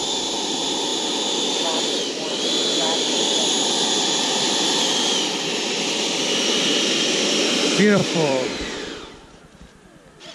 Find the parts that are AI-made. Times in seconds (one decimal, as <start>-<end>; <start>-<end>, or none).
0.0-0.9; 3.0-10.3

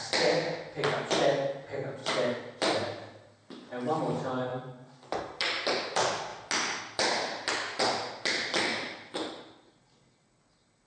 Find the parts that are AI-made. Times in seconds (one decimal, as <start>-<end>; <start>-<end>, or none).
4.5-5.2